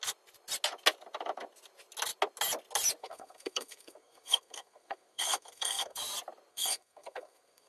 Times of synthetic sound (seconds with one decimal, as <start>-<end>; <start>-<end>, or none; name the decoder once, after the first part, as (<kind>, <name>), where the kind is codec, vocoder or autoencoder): 3.0-6.0 (codec, SNAC); 6.5-7.7